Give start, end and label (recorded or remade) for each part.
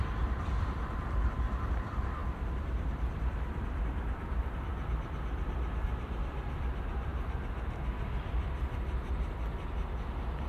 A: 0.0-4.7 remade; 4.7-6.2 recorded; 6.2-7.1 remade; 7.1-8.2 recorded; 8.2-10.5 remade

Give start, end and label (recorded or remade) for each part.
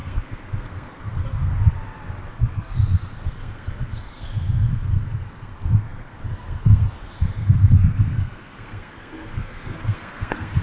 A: 0.0-1.5 remade; 1.5-2.3 recorded; 2.3-10.6 remade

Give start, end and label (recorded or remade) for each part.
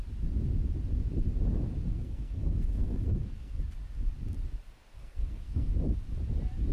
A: 0.0-1.9 recorded; 1.9-3.6 remade; 3.6-5.0 recorded; 5.0-5.7 remade; 5.7-6.7 recorded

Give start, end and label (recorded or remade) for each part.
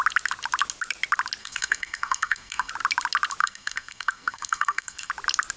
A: 0.0-1.4 recorded; 1.4-2.7 remade; 2.7-3.4 recorded; 3.4-5.1 remade; 5.1-5.6 recorded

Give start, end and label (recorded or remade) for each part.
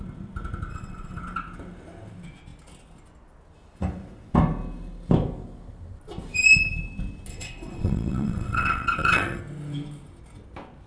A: 0.0-0.7 recorded; 0.7-1.2 remade; 1.2-7.3 recorded; 7.3-9.4 remade; 9.4-10.9 recorded